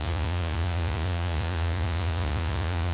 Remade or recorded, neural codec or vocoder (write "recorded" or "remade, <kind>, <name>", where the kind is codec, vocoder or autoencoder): remade, vocoder, Vocos